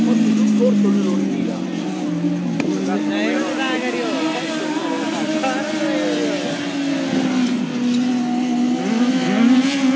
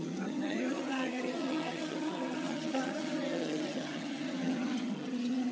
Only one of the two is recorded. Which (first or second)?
first